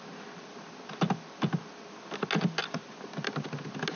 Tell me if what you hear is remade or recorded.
recorded